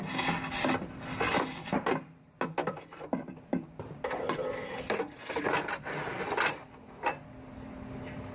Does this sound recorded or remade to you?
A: recorded